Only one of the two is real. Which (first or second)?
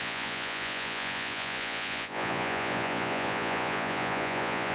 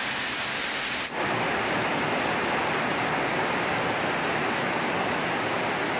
second